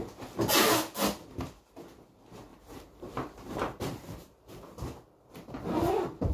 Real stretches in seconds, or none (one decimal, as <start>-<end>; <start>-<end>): 0.0-2.5; 4.6-6.3

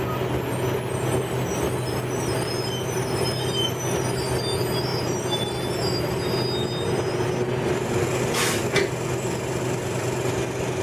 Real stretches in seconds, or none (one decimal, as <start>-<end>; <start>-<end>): 0.0-10.8